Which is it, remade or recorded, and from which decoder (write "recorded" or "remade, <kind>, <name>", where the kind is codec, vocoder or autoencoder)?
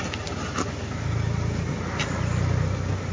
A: recorded